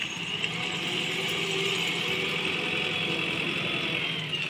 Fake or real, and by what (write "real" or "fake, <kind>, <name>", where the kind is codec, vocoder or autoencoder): real